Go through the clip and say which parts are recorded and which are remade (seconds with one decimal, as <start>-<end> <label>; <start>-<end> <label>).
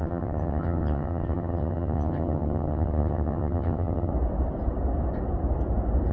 0.0-4.1 remade; 4.1-6.1 recorded